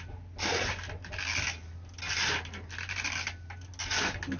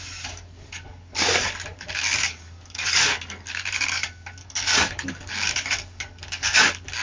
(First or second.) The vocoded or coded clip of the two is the second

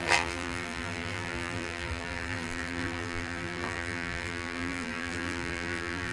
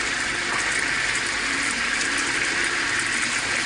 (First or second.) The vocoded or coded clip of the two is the first